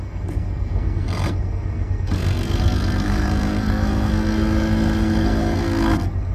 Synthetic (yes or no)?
yes